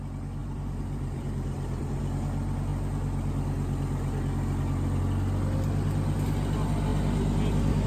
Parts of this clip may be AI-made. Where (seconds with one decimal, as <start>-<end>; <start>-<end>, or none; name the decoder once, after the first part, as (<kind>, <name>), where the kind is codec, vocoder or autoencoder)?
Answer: 0.4-2.0 (vocoder, BigVGAN v2)